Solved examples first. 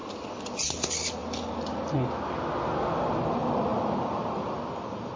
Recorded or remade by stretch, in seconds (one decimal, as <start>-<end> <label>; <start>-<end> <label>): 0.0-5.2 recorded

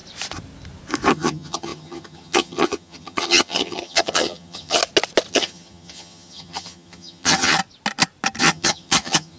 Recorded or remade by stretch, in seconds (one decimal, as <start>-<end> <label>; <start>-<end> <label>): 0.0-1.1 recorded; 1.1-4.8 remade; 4.8-5.3 recorded; 5.3-7.6 remade; 7.6-8.4 recorded; 8.4-9.4 remade

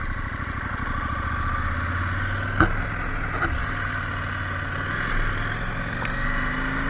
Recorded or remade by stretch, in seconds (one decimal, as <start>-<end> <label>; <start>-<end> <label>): 0.0-6.9 recorded

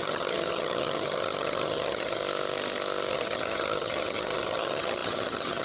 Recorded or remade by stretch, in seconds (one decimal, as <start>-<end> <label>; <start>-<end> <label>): 0.0-2.2 remade; 2.2-3.1 recorded; 3.1-5.6 remade